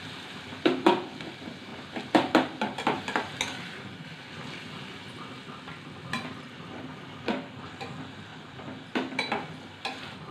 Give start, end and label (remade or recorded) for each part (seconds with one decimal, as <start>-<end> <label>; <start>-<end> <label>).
0.0-10.3 recorded